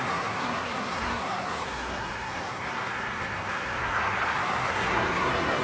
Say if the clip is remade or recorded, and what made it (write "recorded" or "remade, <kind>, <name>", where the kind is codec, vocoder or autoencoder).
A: remade, codec, SNAC